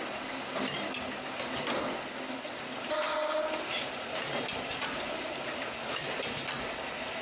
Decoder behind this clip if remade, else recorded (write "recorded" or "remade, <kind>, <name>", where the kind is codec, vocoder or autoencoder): recorded